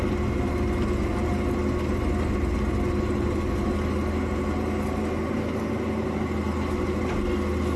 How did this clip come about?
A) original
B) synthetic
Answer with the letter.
A